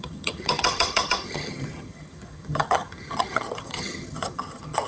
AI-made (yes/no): yes